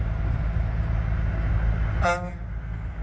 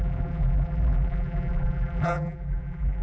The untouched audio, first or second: first